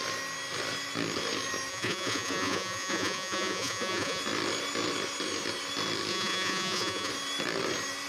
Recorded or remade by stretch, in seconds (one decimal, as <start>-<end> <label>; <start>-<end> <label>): 0.0-1.7 recorded; 1.7-4.2 remade; 4.2-6.1 recorded; 6.1-7.1 remade; 7.1-8.1 recorded